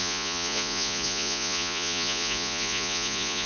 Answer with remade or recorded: remade